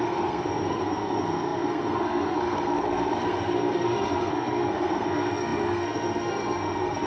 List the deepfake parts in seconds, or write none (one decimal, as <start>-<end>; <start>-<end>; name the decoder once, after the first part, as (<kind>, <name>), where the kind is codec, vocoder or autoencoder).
0.0-7.1 (codec, SNAC)